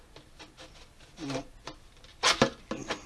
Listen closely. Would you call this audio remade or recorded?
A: recorded